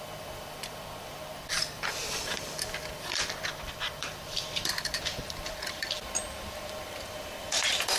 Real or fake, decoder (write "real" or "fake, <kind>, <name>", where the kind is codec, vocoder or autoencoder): fake, vocoder, BigVGAN v2